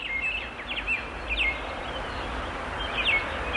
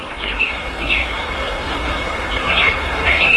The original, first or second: first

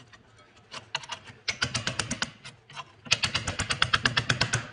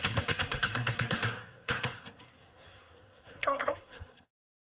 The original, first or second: first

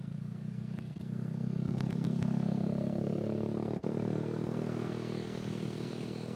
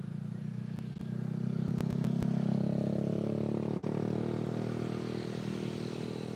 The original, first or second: second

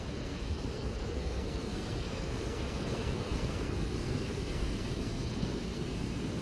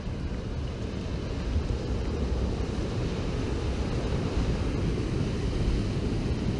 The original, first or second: second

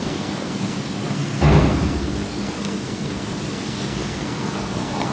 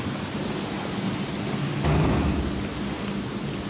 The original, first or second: second